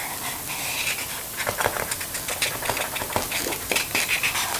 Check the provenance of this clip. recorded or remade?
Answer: recorded